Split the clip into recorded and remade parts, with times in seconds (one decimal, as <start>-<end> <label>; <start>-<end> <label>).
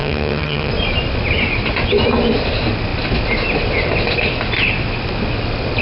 0.0-0.7 remade; 0.7-5.8 recorded